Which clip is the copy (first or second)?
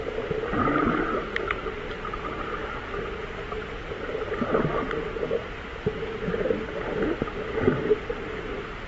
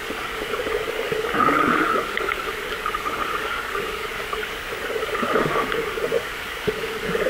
second